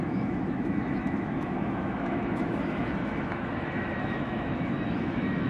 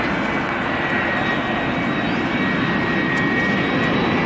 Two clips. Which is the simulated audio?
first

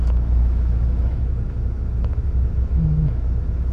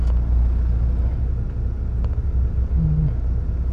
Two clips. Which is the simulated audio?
first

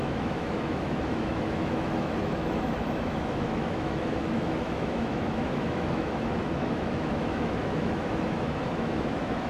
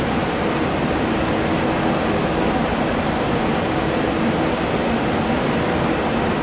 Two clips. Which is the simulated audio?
first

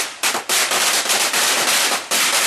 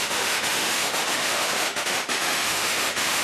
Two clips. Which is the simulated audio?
second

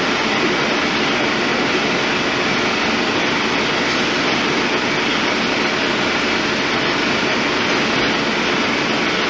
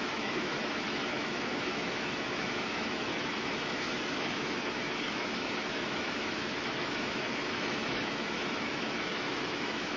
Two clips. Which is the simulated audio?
second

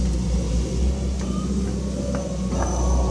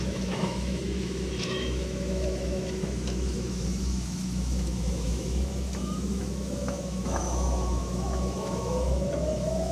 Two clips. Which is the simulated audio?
second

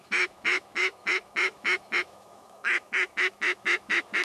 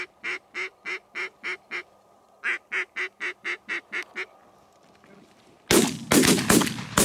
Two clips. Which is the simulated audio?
first